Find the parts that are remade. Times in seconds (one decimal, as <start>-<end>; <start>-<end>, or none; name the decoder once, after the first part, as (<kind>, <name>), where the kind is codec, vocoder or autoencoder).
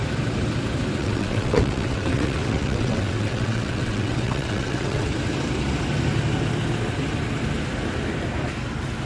1.0-5.1 (vocoder, WaveNeXt)